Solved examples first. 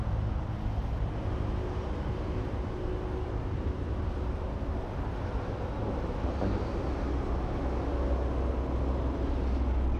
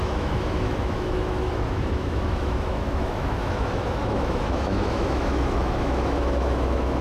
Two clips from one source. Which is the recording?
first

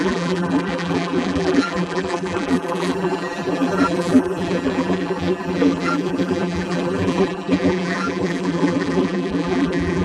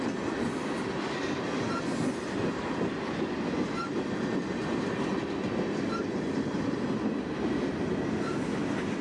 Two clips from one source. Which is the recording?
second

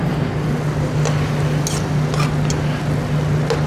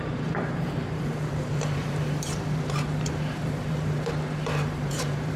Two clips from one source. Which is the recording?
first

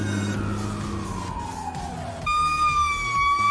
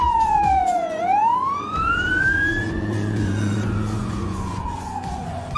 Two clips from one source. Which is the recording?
first